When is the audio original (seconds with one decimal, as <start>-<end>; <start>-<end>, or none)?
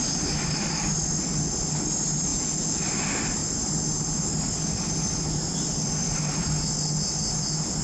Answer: 0.0-2.3; 2.8-7.8